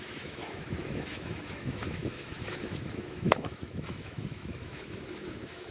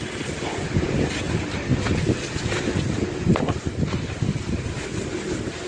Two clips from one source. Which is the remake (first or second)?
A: first